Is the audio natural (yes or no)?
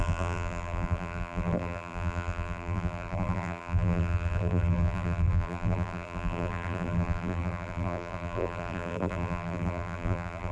no